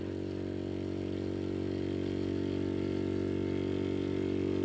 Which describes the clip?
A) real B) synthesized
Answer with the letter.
A